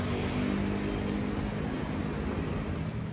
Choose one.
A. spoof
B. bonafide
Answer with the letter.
B